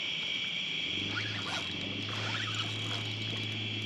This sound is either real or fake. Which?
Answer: real